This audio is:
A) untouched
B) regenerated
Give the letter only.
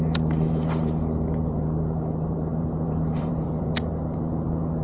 B